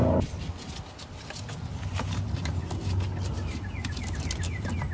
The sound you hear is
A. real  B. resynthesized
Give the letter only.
A